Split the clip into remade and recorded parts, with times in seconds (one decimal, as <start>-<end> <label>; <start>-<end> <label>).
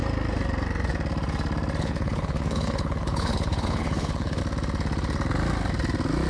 0.0-1.8 recorded; 1.8-4.4 remade; 4.4-6.3 recorded